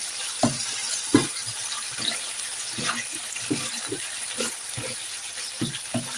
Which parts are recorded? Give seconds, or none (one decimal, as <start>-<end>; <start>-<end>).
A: 0.0-6.2